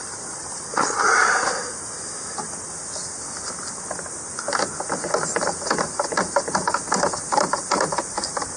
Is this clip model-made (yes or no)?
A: no